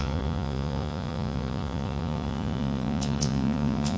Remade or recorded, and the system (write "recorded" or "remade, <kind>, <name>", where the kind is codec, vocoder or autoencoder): remade, vocoder, Vocos